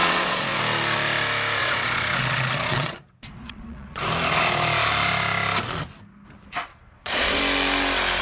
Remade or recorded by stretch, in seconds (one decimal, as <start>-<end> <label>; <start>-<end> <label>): 0.0-0.6 remade; 0.6-1.6 recorded; 1.6-4.0 remade; 4.0-6.7 recorded; 6.7-7.4 remade; 7.4-8.2 recorded